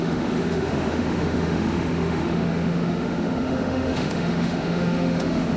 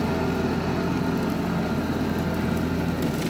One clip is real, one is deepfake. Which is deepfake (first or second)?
first